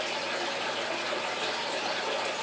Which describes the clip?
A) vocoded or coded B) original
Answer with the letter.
B